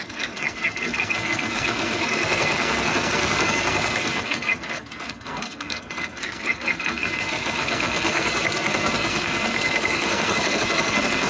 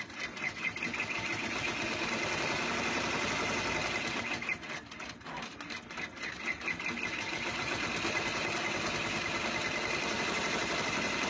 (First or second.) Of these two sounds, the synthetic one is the first